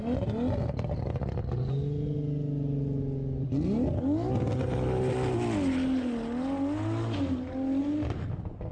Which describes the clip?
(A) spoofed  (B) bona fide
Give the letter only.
B